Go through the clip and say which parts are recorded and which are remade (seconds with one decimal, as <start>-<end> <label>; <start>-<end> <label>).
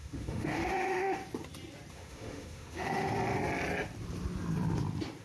0.0-1.2 remade; 1.2-1.9 recorded; 1.9-3.1 remade; 3.1-5.2 recorded